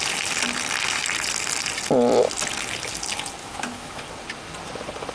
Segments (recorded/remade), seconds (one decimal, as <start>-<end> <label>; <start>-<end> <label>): 0.0-3.4 recorded; 3.4-4.0 remade; 4.0-5.1 recorded